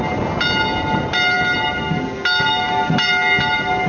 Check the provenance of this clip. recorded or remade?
recorded